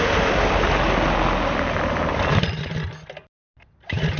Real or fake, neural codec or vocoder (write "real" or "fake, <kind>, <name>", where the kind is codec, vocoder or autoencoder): real